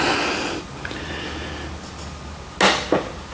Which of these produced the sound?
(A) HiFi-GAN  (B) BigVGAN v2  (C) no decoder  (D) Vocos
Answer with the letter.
C